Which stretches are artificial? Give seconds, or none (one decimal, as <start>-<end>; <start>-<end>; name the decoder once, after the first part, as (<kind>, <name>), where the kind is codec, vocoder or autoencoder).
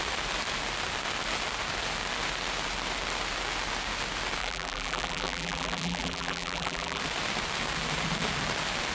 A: 4.4-7.0 (vocoder, BigVGAN v2)